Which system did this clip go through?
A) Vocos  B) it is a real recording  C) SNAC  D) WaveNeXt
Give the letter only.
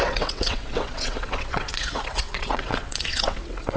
D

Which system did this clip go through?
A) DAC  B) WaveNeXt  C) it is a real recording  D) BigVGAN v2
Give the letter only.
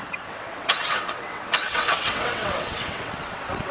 B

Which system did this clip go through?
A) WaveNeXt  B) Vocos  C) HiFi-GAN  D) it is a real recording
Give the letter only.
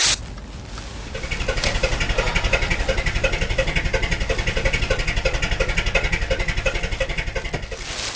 D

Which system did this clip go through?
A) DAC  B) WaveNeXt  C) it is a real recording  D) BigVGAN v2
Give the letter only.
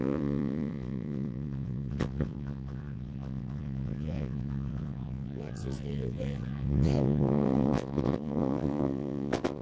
B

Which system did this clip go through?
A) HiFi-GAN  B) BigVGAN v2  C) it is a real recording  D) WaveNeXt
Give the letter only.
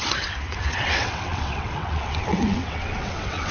D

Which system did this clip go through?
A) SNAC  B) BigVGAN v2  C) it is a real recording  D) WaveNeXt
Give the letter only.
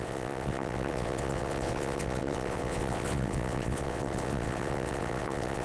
D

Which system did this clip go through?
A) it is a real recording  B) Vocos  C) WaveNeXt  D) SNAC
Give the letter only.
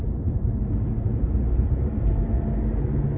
A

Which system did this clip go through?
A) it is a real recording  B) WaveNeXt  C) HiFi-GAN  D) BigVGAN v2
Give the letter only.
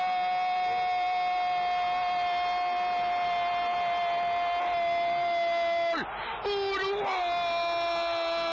A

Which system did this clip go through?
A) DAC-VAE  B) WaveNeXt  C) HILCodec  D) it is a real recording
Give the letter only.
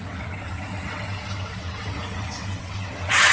B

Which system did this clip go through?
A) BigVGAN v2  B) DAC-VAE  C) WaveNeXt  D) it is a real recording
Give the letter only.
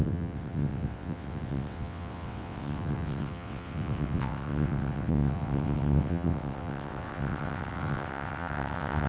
C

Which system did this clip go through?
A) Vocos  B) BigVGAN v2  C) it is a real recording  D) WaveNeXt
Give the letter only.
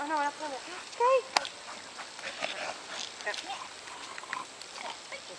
C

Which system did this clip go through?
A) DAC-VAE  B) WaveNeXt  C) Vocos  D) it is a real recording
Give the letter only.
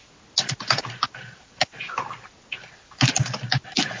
D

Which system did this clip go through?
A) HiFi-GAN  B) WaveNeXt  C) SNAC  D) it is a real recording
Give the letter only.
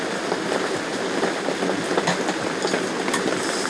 D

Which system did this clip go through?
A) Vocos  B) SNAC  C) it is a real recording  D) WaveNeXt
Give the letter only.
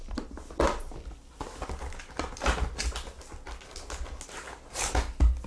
C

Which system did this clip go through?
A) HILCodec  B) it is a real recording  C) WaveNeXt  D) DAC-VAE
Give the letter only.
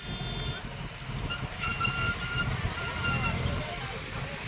B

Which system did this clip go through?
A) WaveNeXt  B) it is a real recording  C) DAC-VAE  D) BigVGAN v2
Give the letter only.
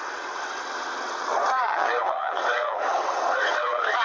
A